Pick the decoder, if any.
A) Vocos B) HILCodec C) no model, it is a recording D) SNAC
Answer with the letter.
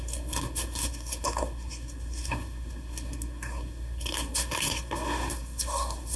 D